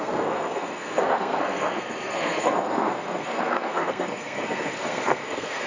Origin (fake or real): fake